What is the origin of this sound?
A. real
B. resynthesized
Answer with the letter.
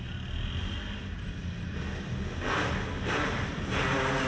A